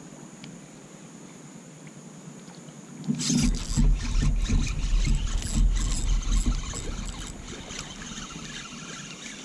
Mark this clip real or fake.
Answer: real